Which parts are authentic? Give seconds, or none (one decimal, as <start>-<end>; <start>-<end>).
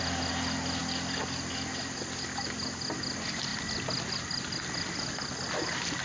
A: 0.0-6.0